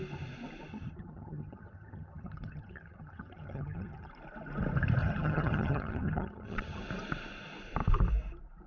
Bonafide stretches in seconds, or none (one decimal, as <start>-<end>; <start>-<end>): 0.0-0.7; 4.1-5.0; 6.8-8.7